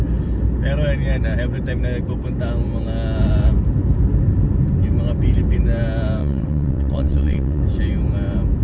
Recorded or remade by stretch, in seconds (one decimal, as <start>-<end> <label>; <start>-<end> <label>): 0.0-6.2 recorded; 6.2-7.6 remade; 7.6-8.6 recorded